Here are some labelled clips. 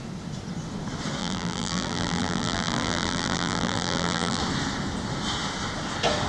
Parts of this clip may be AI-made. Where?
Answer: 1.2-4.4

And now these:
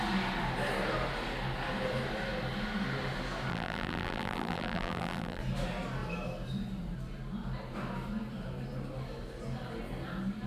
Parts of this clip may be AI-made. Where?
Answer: 3.5-5.4

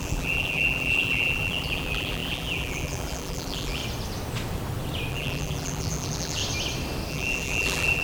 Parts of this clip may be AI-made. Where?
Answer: 0.0-3.8; 5.1-6.4; 7.1-8.0

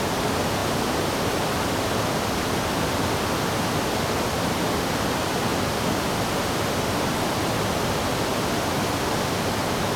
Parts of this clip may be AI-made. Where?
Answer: 0.6-1.5

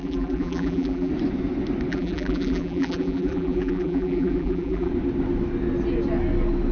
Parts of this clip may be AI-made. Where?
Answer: 0.0-1.1; 1.9-4.9

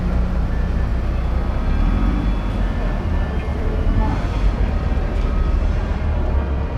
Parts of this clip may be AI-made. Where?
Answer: 3.5-6.8

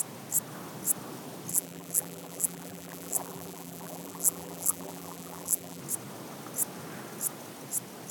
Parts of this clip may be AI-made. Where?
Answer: 1.5-5.8

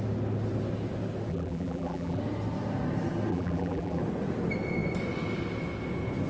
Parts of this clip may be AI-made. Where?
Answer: 1.3-2.2; 3.3-4.0